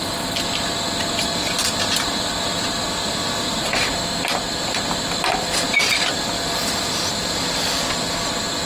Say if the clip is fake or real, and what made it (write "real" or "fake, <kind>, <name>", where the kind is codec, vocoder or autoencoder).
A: real